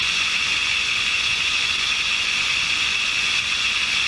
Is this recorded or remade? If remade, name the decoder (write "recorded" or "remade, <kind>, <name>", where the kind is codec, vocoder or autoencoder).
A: remade, vocoder, Vocos